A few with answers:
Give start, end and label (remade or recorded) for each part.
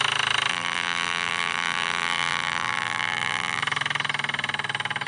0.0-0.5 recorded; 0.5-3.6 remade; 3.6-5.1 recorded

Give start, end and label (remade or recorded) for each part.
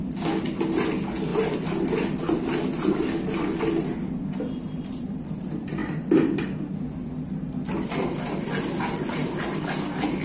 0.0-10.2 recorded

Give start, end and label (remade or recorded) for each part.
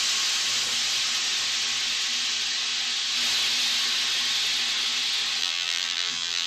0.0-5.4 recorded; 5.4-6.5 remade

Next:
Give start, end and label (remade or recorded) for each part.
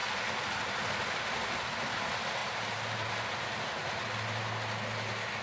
0.0-5.4 recorded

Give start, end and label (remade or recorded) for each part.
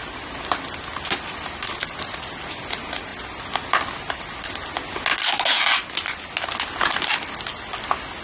0.0-2.3 remade; 2.3-3.1 recorded; 3.1-4.5 remade; 4.5-8.2 recorded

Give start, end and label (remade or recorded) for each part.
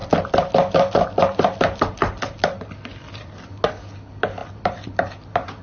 0.0-3.4 remade; 3.4-4.4 recorded; 4.4-5.6 remade